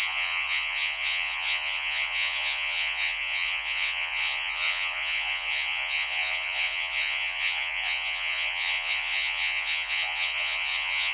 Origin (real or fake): fake